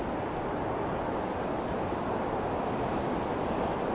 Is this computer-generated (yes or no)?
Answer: no